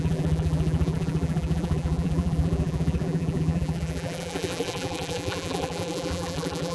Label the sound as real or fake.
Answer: fake